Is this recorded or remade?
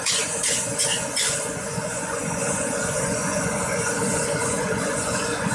remade